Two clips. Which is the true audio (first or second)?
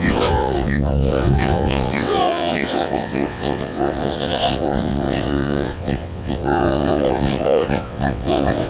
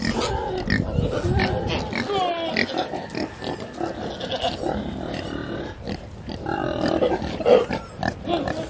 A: second